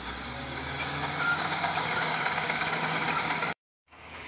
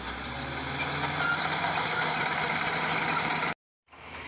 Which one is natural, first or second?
second